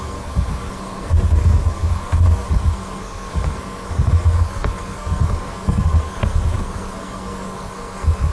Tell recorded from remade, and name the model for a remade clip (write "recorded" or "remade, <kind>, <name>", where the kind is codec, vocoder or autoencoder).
remade, codec, SNAC